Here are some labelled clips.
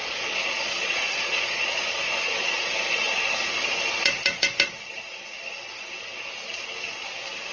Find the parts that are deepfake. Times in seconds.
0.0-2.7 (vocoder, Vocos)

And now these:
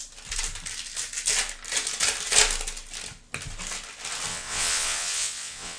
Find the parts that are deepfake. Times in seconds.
4.3-5.8 (vocoder, WaveNeXt)

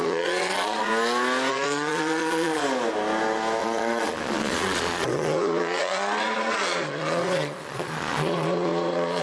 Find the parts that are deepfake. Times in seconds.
0.0-0.9 (vocoder, Vocos); 1.5-2.6; 3.6-9.2

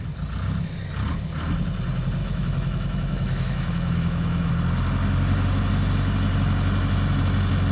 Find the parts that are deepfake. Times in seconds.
2.2-4.5 (autoencoder, DAC-VAE)

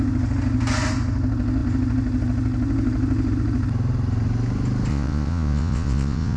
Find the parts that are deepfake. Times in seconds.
4.9-6.4 (vocoder, Vocos)

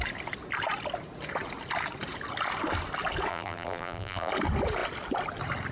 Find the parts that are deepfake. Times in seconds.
3.3-4.3 (vocoder, BigVGAN v2)

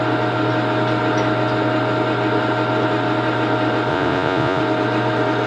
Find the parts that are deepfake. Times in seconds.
3.9-4.6 (vocoder, Vocos)

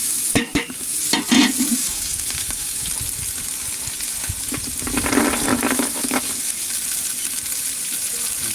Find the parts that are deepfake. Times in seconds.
0.0-1.0 (autoencoder, DAC-VAE); 1.8-2.9; 5.5-6.7